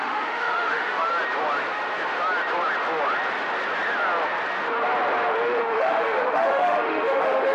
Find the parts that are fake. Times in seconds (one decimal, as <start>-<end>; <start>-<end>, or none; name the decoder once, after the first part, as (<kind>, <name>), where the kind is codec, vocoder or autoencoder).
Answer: 0.0-1.1 (autoencoder, DAC-VAE); 5.6-7.5

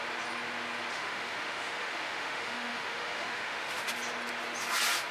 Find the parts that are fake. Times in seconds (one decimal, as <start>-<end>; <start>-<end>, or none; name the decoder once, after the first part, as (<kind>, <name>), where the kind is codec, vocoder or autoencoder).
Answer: 0.9-3.9 (autoencoder, DAC-VAE)

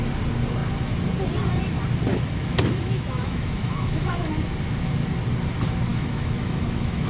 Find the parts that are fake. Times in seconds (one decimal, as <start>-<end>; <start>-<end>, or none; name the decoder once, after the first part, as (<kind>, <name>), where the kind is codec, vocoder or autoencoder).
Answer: 2.1-4.3 (autoencoder, DAC-VAE); 5.9-7.1

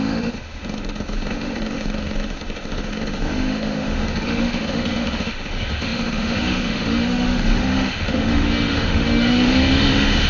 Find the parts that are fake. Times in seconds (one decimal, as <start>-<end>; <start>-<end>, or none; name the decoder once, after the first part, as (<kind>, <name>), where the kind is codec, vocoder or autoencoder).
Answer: 0.0-10.3 (autoencoder, DAC-VAE)

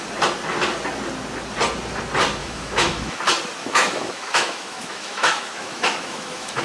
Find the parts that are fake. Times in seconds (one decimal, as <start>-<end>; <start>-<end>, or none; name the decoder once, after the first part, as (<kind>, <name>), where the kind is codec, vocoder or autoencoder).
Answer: 2.4-3.2 (autoencoder, DAC-VAE); 3.6-6.6

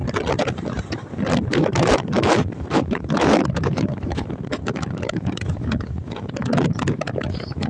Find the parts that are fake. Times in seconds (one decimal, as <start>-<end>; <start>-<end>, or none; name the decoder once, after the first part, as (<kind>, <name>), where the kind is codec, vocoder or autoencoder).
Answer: 1.5-7.7 (autoencoder, DAC-VAE)

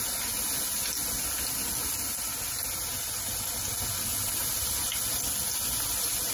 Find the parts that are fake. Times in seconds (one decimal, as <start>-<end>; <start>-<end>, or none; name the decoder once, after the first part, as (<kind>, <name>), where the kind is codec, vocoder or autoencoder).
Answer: none